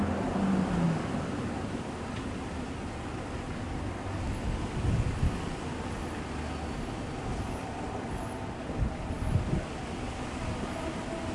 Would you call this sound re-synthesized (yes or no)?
no